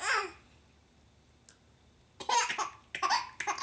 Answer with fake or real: real